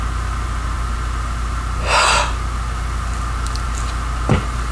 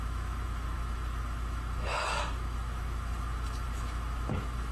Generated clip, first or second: second